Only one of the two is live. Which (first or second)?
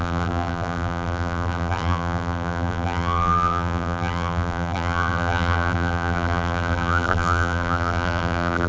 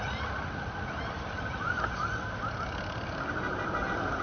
second